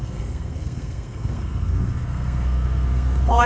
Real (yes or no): no